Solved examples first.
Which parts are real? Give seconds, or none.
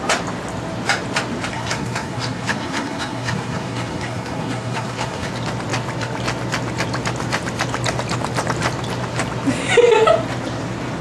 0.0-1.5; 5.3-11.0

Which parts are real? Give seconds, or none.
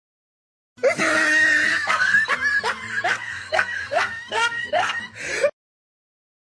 0.0-1.7; 2.3-3.1; 5.0-6.5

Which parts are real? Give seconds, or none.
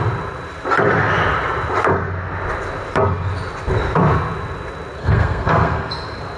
0.0-5.0; 5.9-6.4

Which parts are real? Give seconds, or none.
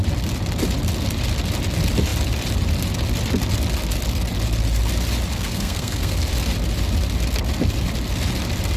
0.0-5.3; 6.2-8.8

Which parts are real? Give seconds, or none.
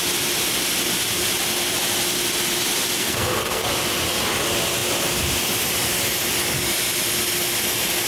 0.0-3.0; 3.7-8.1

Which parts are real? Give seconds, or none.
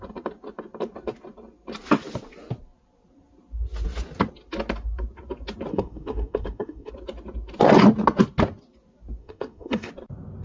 0.0-5.7; 6.9-9.2; 9.9-10.4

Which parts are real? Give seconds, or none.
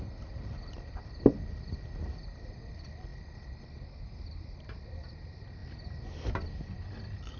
0.0-7.4